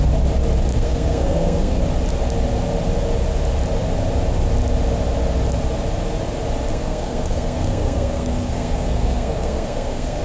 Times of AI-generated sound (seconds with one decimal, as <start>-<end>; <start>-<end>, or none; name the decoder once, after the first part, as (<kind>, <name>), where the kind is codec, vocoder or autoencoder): 0.7-1.8 (codec, SNAC); 6.7-10.2